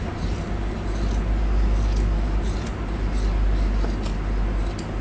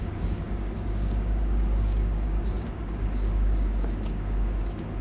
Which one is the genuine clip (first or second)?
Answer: first